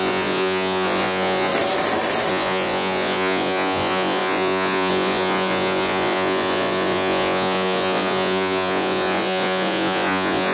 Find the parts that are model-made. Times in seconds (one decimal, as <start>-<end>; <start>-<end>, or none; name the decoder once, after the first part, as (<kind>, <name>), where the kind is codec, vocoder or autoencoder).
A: 0.0-1.5 (vocoder, Vocos); 2.3-10.5